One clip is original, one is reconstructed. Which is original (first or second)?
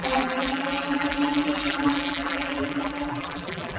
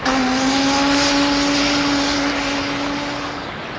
second